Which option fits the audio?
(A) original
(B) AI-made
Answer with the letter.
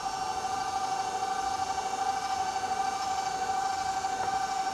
A